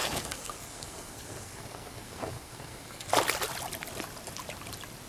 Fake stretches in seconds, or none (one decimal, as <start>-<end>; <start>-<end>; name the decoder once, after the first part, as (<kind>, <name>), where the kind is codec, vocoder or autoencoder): 0.0-3.1 (codec, SNAC)